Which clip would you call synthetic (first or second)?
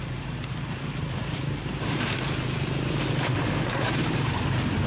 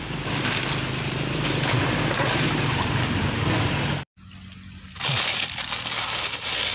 first